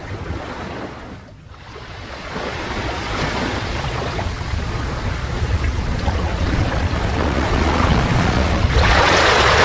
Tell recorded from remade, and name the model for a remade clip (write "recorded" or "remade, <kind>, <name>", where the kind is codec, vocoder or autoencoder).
remade, vocoder, Vocos